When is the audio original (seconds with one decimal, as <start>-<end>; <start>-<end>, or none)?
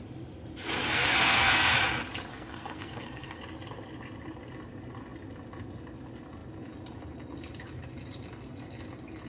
0.0-0.8; 1.8-2.3; 3.4-9.3